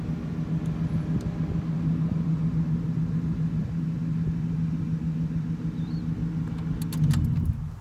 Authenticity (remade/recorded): recorded